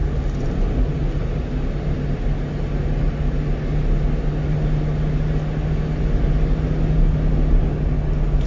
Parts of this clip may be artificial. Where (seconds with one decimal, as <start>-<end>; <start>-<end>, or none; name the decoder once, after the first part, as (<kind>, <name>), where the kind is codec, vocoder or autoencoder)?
0.0-0.8 (vocoder, BigVGAN v2)